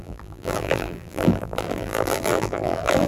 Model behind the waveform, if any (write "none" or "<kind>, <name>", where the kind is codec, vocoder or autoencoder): vocoder, BigVGAN v2